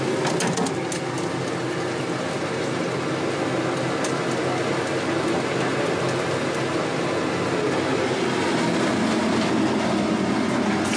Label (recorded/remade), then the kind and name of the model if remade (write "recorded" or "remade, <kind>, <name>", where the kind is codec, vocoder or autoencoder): recorded